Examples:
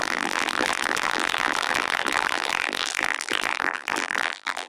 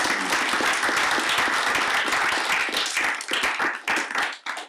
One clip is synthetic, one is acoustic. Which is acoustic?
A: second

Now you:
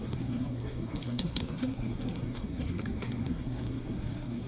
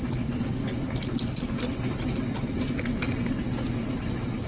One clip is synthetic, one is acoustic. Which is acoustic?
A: second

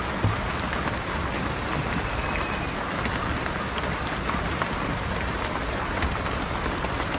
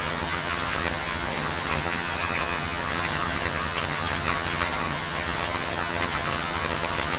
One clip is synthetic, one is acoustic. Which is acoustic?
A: first